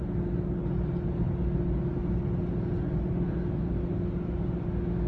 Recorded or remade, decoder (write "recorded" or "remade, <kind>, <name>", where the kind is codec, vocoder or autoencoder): recorded